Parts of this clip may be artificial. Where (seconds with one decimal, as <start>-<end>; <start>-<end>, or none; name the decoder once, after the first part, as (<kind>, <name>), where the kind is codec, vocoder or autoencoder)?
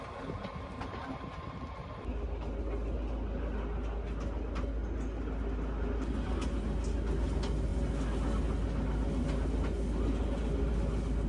none